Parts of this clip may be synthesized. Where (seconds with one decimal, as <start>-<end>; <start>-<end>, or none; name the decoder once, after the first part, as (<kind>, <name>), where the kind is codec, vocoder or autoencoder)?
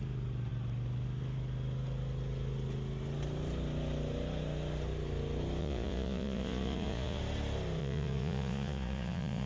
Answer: 5.6-7.2 (vocoder, Vocos); 7.8-9.5